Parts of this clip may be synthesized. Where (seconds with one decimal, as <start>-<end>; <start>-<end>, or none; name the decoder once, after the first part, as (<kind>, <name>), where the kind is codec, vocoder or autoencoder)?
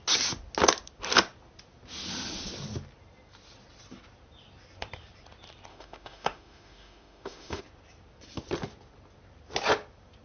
5.7-7.6 (autoencoder, DAC-VAE)